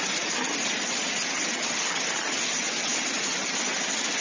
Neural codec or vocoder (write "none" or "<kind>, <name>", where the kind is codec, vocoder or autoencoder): none